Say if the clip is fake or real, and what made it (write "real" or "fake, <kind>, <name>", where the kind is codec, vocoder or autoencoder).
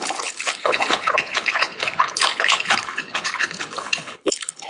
fake, codec, HILCodec